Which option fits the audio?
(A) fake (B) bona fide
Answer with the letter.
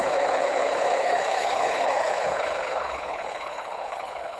A